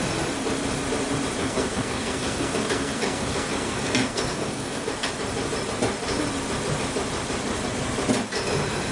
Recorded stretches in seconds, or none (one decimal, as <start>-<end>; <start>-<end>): 0.0-1.4; 5.1-8.9

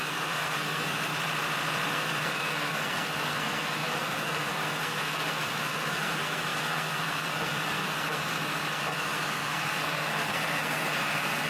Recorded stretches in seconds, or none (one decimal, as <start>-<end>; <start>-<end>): 1.1-1.9

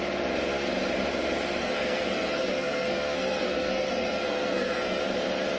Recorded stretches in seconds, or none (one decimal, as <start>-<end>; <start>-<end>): 0.0-1.6; 5.0-5.6

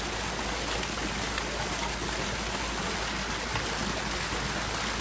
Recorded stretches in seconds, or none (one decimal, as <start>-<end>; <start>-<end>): 0.0-5.0

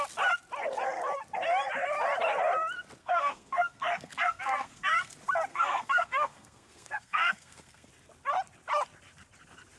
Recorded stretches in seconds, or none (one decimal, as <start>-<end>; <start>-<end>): 0.0-3.0; 5.1-5.5; 7.9-9.8

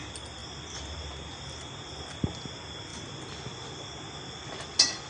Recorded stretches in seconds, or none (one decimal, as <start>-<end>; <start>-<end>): 0.0-5.1